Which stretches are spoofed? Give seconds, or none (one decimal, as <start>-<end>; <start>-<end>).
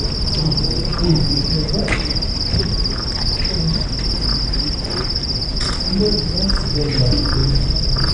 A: 0.9-2.1